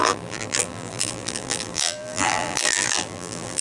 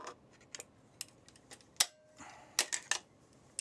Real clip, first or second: second